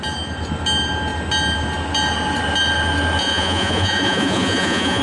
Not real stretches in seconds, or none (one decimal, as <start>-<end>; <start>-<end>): 3.2-5.0